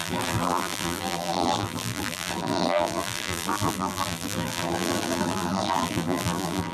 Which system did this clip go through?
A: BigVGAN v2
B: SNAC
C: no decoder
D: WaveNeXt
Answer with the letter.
A